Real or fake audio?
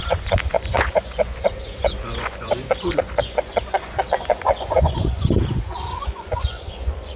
fake